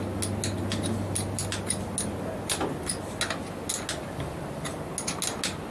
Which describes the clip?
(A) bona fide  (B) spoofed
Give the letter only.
A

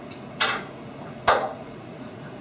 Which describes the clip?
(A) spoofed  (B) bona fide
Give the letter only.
A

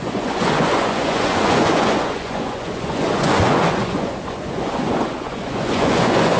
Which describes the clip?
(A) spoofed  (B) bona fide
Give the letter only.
A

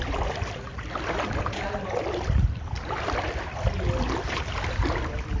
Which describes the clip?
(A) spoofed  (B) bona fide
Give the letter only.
B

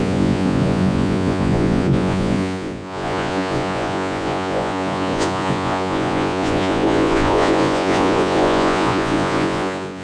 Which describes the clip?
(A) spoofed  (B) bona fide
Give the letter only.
A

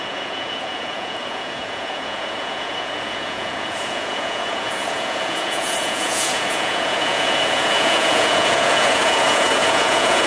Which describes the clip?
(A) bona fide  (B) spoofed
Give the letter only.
B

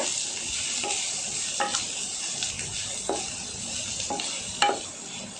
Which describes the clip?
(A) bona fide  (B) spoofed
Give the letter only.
A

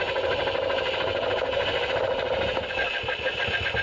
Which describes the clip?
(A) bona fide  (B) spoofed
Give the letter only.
A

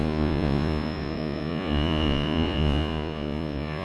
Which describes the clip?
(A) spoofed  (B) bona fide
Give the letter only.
A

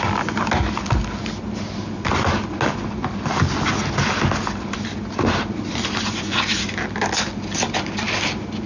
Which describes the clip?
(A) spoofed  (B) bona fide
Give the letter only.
B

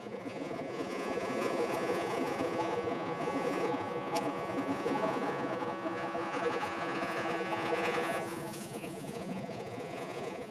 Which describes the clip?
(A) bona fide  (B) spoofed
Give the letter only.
B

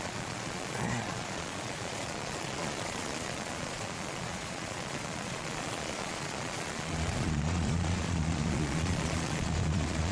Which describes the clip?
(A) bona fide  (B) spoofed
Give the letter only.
B